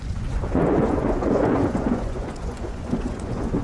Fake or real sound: fake